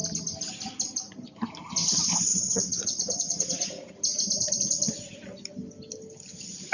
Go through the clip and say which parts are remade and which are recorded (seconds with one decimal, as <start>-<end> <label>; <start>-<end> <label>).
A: 0.0-2.3 recorded; 2.3-3.9 remade; 3.9-6.7 recorded